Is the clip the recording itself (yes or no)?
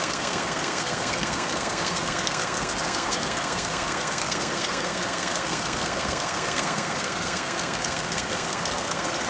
no